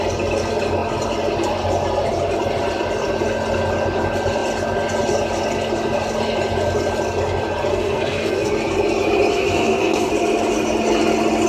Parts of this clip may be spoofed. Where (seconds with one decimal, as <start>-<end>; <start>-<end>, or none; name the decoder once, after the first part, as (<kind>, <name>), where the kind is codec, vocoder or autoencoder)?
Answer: 7.7-8.5 (codec, SNAC); 9.3-10.1